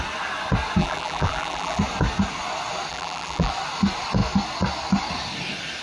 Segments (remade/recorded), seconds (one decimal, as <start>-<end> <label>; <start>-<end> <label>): 0.0-0.8 recorded; 0.8-1.8 remade; 1.8-2.9 recorded; 2.9-3.5 remade; 3.5-5.8 recorded